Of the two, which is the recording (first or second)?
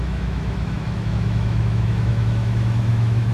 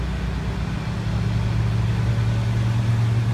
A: second